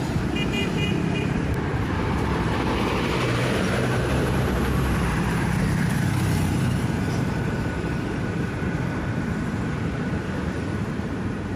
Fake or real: fake